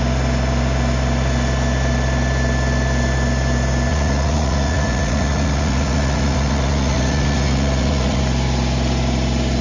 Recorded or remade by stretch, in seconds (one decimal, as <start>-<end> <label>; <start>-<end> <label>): 0.0-3.9 recorded; 3.9-8.2 remade; 8.2-9.6 recorded